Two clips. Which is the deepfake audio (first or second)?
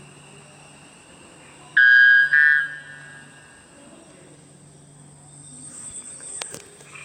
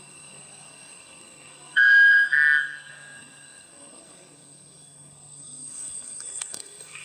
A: second